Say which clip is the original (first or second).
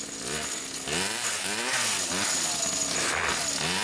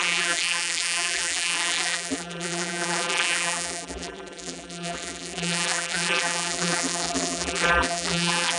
first